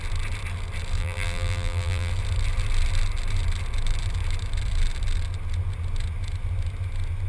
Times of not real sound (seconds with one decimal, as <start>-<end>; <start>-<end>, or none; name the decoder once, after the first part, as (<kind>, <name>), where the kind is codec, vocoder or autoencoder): 1.0-2.1 (vocoder, BigVGAN v2)